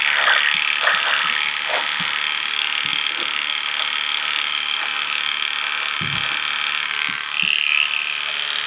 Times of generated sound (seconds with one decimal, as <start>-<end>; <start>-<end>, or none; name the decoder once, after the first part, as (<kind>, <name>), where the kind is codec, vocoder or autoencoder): none